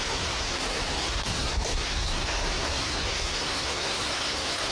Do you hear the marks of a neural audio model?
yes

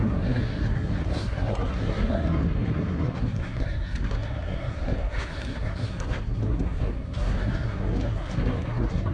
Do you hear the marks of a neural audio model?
yes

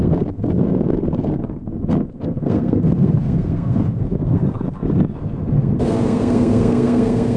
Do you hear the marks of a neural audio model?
yes